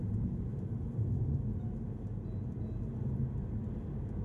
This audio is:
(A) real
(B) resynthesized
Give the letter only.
A